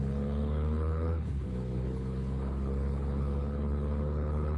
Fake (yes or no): yes